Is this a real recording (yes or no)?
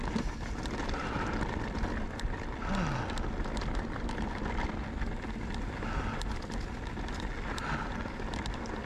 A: yes